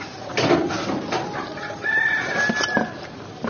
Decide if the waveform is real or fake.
real